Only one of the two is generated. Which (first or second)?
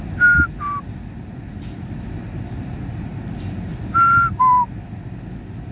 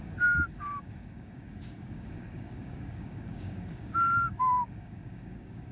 second